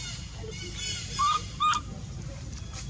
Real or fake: real